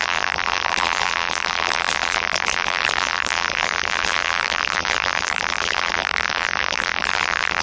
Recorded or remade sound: remade